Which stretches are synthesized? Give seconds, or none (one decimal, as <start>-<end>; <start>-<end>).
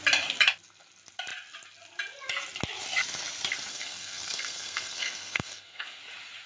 3.7-6.0